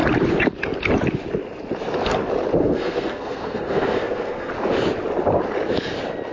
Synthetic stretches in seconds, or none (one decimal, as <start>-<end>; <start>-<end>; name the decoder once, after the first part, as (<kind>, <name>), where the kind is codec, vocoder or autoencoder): 2.6-4.5 (codec, SNAC)